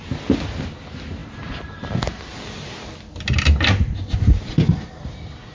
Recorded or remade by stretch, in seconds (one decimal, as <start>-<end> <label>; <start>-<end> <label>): 0.0-5.5 recorded